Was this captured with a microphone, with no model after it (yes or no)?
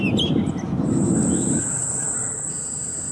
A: yes